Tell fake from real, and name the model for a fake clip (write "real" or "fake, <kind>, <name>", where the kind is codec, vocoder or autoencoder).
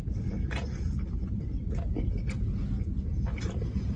real